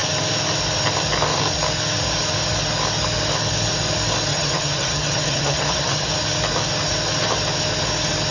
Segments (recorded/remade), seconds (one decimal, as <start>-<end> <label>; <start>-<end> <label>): 0.0-4.3 recorded; 4.3-6.1 remade; 6.1-8.3 recorded